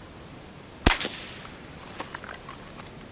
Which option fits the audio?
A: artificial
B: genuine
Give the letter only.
B